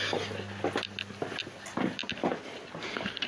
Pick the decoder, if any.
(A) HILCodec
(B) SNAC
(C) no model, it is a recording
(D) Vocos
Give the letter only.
C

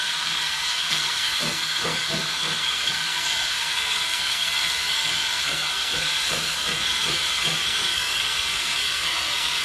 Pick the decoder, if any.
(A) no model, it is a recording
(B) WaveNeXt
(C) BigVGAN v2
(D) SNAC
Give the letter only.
D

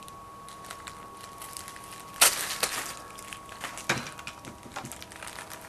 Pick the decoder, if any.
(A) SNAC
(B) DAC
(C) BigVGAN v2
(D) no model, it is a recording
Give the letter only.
D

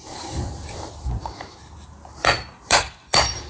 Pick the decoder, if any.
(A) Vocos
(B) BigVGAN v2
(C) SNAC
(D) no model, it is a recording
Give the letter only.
B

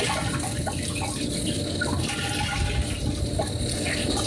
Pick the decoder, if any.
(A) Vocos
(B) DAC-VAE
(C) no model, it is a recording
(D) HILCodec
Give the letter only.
C